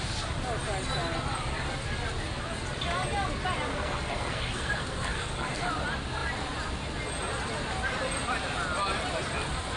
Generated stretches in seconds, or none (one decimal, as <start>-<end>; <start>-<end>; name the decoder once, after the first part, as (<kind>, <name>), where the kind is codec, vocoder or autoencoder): 3.7-5.7 (codec, SNAC)